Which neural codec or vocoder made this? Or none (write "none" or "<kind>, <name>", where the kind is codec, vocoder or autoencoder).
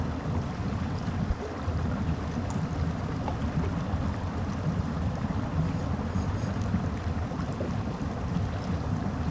none